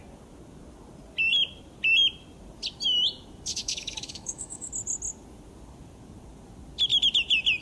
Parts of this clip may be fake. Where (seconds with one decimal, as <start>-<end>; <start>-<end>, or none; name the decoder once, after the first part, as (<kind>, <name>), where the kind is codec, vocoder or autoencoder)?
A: 3.5-4.7 (autoencoder, DAC-VAE)